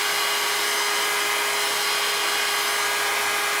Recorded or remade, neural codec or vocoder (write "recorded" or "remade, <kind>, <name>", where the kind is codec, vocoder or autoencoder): recorded